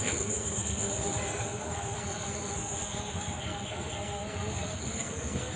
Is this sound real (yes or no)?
no